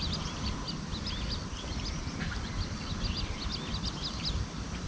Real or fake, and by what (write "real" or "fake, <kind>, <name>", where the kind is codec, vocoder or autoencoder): real